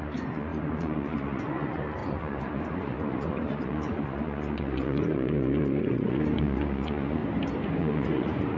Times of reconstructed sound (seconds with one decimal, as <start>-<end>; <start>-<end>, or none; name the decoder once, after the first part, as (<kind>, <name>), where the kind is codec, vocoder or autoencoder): 0.0-7.2 (vocoder, Vocos); 7.8-8.6